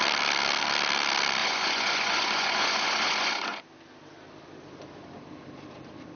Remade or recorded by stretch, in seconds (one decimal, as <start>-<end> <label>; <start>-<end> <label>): 0.0-1.4 recorded; 1.4-3.6 remade; 3.6-6.2 recorded